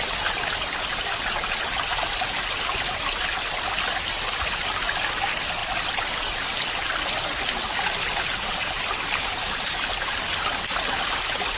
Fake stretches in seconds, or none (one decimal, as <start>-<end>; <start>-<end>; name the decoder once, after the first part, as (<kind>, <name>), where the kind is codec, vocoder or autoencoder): none